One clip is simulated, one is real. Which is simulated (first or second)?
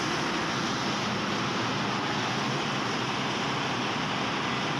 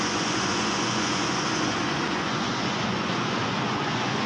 second